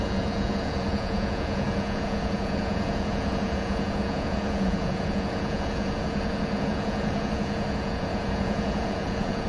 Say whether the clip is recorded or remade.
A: remade